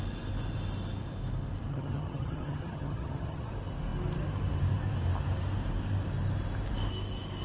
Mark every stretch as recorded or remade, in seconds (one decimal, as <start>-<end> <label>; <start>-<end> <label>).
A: 0.0-1.7 recorded; 1.7-3.5 remade; 3.5-7.4 recorded